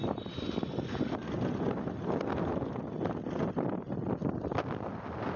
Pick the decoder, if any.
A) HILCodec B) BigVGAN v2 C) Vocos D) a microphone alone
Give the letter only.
D